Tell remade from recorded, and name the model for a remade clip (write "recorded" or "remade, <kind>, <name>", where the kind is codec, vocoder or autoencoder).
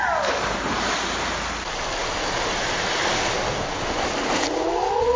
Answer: recorded